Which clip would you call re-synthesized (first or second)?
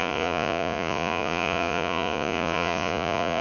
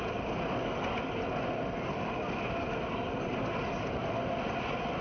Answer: first